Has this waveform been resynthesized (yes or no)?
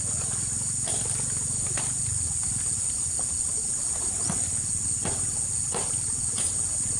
no